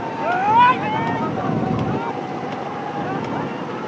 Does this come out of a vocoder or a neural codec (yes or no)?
no